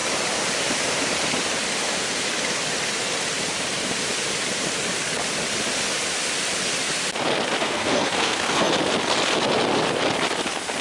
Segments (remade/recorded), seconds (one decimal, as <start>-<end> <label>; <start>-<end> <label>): 0.0-7.6 recorded; 7.6-8.7 remade; 8.7-10.8 recorded